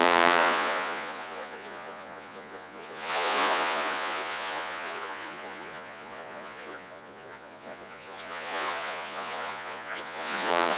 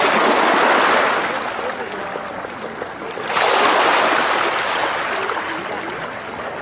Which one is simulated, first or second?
first